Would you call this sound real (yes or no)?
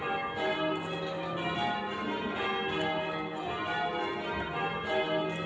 yes